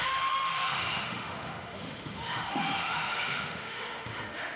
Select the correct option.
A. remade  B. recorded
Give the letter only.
A